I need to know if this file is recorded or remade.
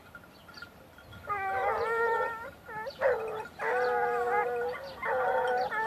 recorded